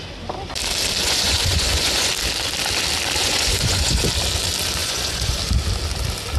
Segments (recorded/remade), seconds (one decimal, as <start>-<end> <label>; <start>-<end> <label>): 0.0-1.0 recorded; 1.0-2.1 remade; 2.1-3.2 recorded; 3.2-4.0 remade; 4.0-4.8 recorded; 4.8-5.4 remade; 5.4-6.4 recorded

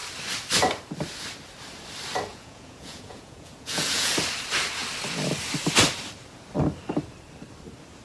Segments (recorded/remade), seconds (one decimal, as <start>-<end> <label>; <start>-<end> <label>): 0.0-2.3 recorded; 2.3-4.1 remade; 4.1-8.0 recorded

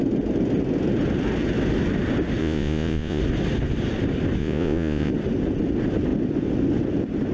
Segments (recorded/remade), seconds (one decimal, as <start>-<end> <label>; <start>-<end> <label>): 0.0-2.4 recorded; 2.4-3.2 remade; 3.2-4.4 recorded; 4.4-5.1 remade; 5.1-7.3 recorded

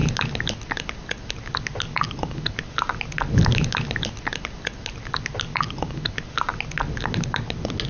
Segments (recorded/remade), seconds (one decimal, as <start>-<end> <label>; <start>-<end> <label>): 0.0-7.9 recorded